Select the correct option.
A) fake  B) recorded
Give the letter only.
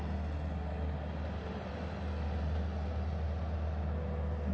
B